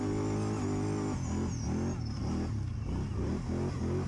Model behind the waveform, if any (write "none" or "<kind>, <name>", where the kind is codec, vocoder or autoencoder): none